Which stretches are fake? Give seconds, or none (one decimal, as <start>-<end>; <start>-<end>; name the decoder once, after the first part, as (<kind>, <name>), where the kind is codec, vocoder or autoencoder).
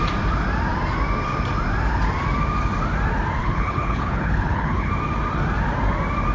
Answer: 3.4-4.9 (codec, HILCodec)